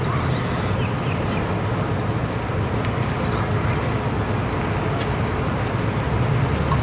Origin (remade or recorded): recorded